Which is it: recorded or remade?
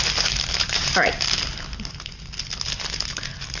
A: recorded